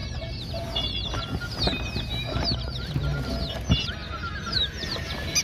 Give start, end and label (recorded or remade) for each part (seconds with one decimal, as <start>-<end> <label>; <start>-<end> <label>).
0.0-0.8 remade; 0.8-5.4 recorded